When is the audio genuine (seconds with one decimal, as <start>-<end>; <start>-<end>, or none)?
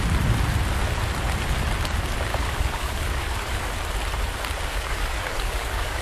0.0-2.3; 3.7-4.7